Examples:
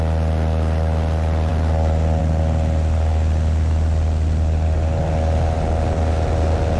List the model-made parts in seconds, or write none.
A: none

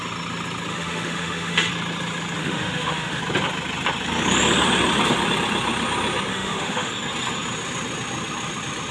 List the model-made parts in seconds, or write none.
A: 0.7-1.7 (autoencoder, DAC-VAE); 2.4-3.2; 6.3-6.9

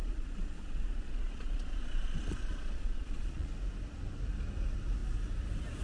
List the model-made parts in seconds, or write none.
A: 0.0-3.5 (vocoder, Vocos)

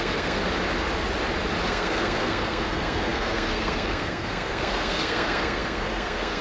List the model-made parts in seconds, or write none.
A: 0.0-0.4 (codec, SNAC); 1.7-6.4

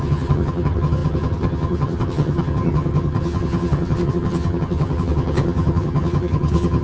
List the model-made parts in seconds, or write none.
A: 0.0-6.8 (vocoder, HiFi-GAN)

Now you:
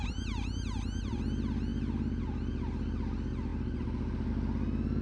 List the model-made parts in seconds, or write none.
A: none

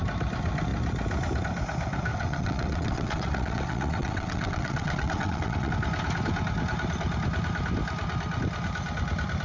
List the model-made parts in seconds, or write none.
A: 2.1-5.7 (vocoder, WaveNeXt)